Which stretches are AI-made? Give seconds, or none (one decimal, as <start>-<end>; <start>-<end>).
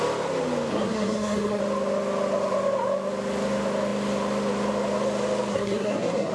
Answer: 0.7-1.6; 5.5-6.3